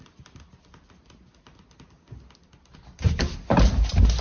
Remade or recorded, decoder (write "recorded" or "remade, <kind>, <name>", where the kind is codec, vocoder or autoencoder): recorded